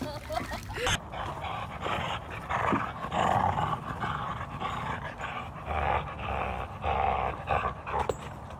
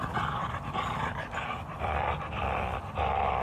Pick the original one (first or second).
first